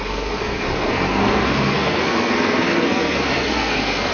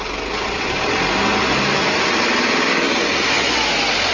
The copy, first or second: first